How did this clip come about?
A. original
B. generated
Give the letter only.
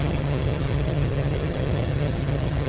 B